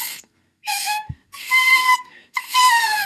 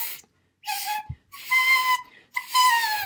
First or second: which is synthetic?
first